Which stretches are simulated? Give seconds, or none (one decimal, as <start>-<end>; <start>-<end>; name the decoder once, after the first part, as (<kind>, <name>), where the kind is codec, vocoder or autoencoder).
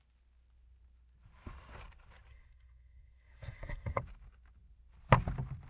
2.3-4.0 (codec, SNAC)